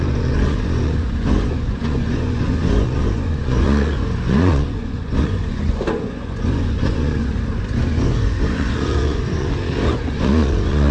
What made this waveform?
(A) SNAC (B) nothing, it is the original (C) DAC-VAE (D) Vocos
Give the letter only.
D